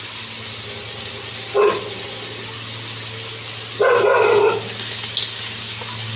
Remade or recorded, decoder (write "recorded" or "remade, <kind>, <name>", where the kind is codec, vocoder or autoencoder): recorded